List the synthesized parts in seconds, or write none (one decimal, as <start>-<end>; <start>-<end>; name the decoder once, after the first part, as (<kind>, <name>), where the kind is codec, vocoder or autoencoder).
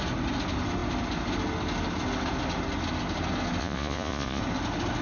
3.6-4.4 (vocoder, Vocos)